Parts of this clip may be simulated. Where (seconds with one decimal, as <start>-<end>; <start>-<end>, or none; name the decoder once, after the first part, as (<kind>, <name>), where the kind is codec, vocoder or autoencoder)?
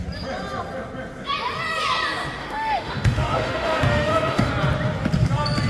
2.4-4.5 (autoencoder, DAC-VAE)